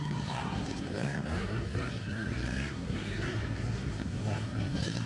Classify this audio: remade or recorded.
remade